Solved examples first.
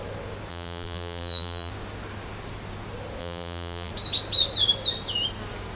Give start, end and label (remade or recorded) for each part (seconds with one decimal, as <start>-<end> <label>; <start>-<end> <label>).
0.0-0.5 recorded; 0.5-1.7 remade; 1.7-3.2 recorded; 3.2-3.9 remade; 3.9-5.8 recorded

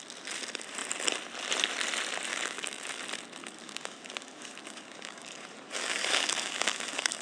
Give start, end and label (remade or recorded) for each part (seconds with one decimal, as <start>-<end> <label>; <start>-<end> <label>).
0.0-2.3 recorded; 2.3-3.0 remade; 3.0-3.4 recorded; 3.4-7.2 remade

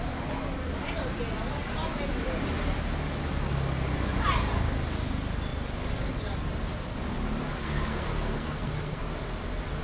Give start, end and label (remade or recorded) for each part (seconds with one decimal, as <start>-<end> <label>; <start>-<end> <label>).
0.0-7.6 recorded; 7.6-9.0 remade; 9.0-9.8 recorded